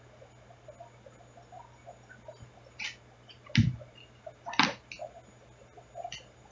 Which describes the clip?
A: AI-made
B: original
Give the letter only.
B